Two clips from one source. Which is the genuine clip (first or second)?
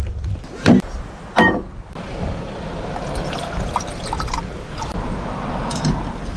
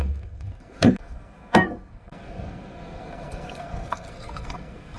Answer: first